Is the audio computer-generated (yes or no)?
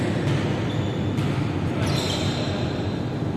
no